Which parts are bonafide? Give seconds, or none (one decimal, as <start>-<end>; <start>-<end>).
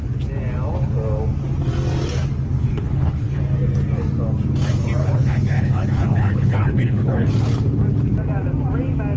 0.0-2.6; 3.4-5.0; 7.3-9.2